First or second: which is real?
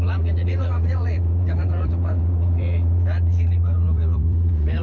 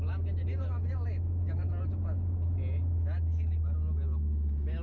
second